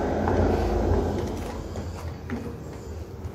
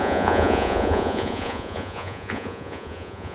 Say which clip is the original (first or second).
first